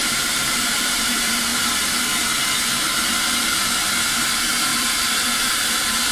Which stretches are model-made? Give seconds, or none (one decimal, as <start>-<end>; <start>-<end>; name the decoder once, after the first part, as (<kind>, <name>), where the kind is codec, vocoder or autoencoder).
0.0-1.5 (vocoder, BigVGAN v2); 4.3-6.1